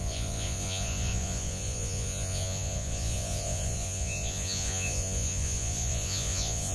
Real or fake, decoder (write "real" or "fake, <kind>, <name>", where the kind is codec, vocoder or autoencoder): fake, vocoder, Vocos